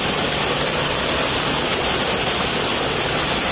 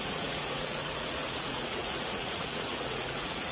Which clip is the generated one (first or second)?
second